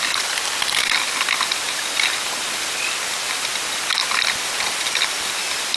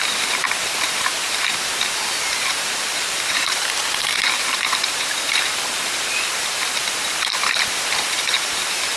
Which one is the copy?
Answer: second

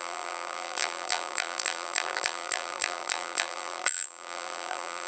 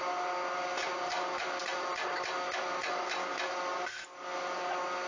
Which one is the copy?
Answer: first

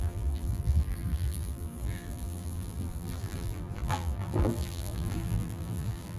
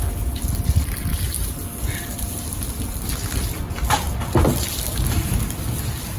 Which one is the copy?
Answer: first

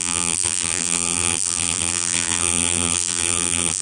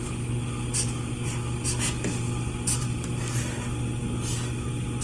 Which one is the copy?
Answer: first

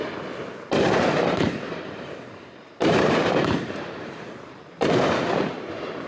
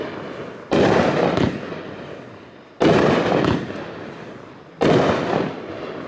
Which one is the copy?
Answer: first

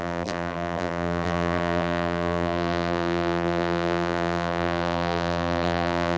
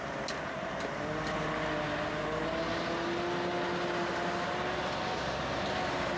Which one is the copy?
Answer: first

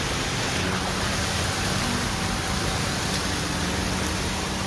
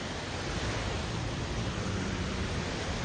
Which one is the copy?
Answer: second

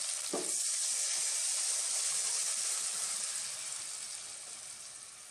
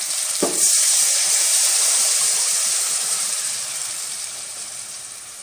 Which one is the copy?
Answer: second